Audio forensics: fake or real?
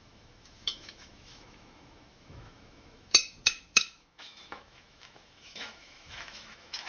fake